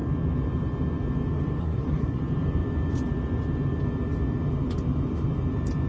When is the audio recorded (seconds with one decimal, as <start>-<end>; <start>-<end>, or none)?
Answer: 0.0-1.6; 2.2-5.9